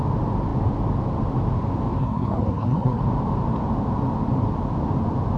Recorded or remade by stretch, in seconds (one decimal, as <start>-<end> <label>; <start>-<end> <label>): 0.0-2.0 recorded; 2.0-3.0 remade; 3.0-5.4 recorded